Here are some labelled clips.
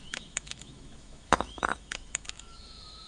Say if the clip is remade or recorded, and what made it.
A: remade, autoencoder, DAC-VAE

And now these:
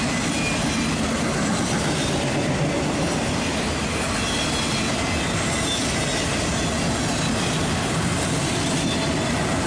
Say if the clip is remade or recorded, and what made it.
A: recorded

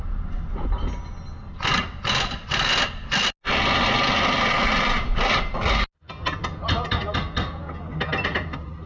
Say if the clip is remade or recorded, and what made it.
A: recorded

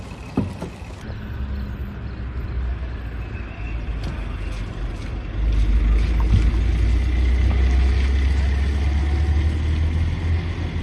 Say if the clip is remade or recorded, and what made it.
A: recorded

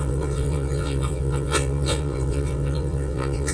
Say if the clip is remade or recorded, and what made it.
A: remade, vocoder, WaveNeXt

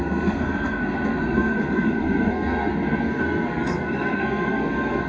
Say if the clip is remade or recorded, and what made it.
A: remade, codec, SNAC